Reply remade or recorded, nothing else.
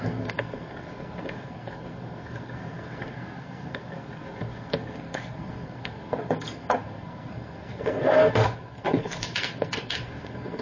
remade